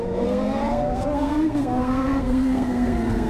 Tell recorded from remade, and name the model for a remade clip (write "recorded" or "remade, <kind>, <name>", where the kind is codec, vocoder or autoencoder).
remade, codec, SNAC